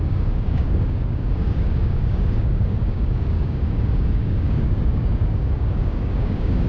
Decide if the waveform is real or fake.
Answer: fake